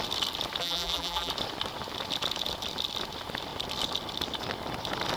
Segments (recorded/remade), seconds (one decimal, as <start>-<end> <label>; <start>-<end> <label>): 0.0-0.6 recorded; 0.6-1.3 remade; 1.3-5.2 recorded